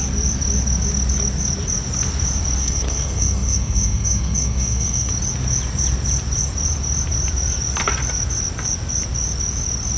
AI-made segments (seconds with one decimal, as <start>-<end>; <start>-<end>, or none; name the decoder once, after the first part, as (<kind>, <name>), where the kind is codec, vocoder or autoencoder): 2.6-5.1 (codec, SNAC)